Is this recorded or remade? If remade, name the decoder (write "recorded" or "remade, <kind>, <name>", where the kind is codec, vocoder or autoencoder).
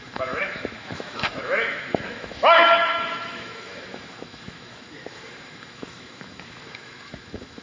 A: remade, autoencoder, DAC-VAE